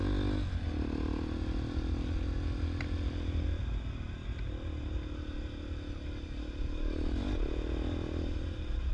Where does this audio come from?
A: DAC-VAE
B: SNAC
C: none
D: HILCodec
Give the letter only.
C